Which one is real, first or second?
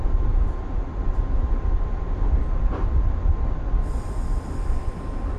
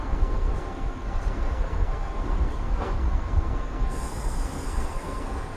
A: first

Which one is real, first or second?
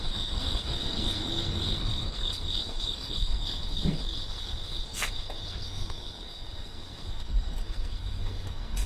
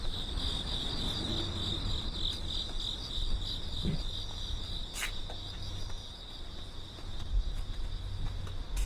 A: second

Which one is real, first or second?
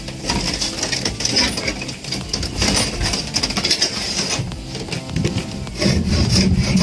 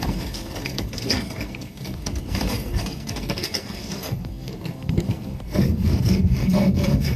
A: first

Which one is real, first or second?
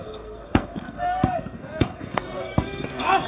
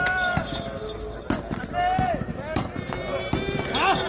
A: second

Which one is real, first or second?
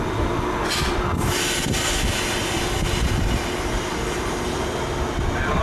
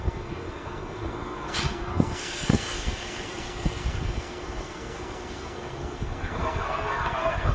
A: first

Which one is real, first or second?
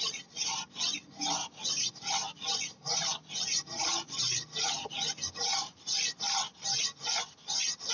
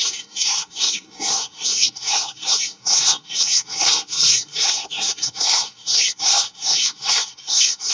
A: first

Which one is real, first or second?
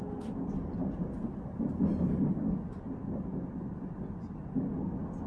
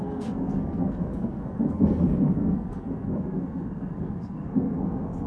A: first